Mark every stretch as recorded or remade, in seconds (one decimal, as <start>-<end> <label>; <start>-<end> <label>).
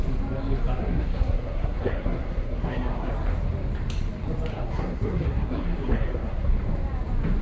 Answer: 0.0-0.8 recorded; 0.8-3.1 remade; 3.1-4.5 recorded; 4.5-6.5 remade; 6.5-7.4 recorded